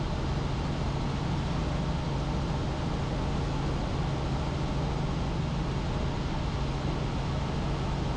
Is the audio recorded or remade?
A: recorded